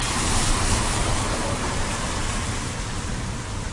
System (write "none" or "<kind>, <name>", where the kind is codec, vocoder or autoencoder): vocoder, BigVGAN v2